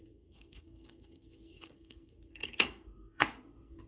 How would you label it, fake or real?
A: fake